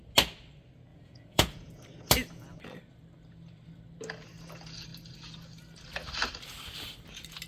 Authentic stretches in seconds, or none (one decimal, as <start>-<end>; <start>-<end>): 0.0-0.9; 1.7-7.5